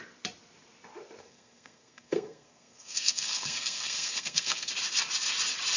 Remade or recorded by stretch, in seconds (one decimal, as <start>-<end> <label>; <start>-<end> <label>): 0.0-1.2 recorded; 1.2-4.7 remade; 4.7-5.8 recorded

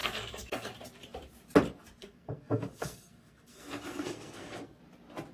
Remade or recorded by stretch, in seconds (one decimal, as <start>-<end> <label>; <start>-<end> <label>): 0.0-0.7 remade; 0.7-2.0 recorded; 2.0-4.8 remade; 4.8-5.3 recorded

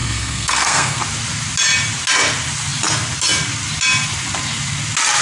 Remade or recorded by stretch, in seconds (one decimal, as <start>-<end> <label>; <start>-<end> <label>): 0.0-1.0 remade; 1.0-5.2 recorded

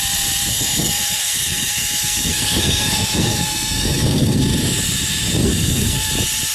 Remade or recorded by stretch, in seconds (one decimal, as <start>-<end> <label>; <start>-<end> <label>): 0.0-0.5 recorded; 0.5-4.4 remade; 4.4-5.4 recorded; 5.4-6.1 remade; 6.1-6.5 recorded

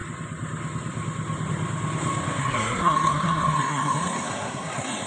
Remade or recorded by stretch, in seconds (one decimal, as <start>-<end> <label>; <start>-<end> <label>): 0.0-2.4 recorded; 2.4-5.1 remade

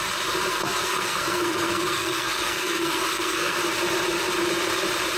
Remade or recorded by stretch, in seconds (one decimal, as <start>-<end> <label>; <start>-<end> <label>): 0.0-0.5 recorded; 0.5-3.6 remade; 3.6-5.2 recorded

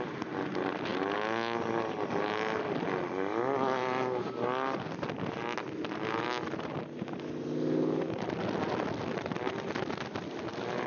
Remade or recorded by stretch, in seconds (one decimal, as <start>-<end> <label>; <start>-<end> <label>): 0.0-10.9 recorded

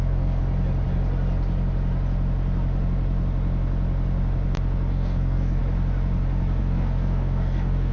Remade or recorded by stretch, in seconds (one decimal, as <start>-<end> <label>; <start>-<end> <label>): 0.0-0.4 remade; 0.4-4.9 recorded; 4.9-5.6 remade; 5.6-6.6 recorded; 6.6-7.9 remade